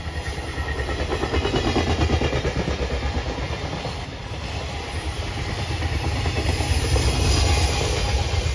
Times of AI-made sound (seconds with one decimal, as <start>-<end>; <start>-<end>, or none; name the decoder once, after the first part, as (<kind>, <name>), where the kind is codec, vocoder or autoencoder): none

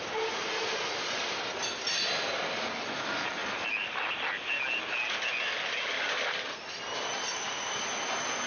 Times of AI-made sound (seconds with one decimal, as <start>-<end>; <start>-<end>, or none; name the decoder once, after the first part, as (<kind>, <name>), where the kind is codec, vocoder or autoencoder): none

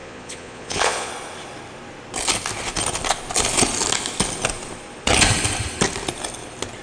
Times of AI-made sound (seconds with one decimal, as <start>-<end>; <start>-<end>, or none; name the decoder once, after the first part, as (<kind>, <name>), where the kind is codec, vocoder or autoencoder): 0.0-1.1 (vocoder, Vocos)

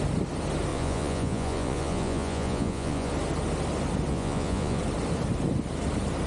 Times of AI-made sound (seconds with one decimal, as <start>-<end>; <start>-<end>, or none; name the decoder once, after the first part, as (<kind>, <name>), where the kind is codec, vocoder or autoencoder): 0.7-3.1 (vocoder, Vocos); 4.1-4.8